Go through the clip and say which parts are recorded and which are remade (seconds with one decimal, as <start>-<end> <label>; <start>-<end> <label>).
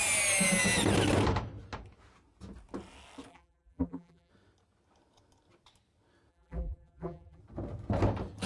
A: 0.0-3.3 recorded; 3.3-4.3 remade; 4.3-6.3 recorded; 6.3-7.4 remade; 7.4-8.5 recorded